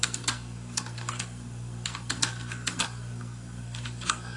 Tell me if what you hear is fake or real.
fake